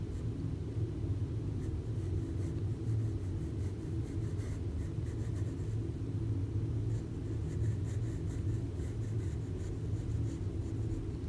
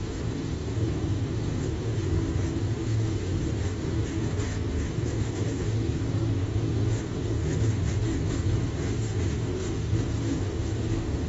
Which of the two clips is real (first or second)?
first